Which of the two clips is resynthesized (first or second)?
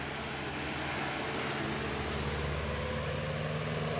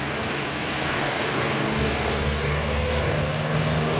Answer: second